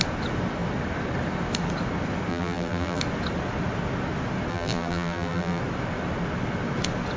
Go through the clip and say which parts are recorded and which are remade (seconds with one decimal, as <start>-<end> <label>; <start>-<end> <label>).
0.0-2.3 recorded; 2.3-3.0 remade; 3.0-4.5 recorded; 4.5-5.6 remade; 5.6-7.2 recorded